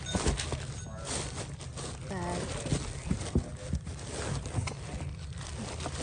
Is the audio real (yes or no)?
yes